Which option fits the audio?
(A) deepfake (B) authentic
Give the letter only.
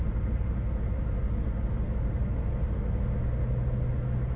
B